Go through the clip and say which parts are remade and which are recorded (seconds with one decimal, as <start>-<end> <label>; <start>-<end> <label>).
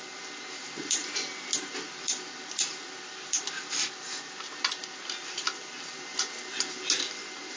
0.0-7.6 remade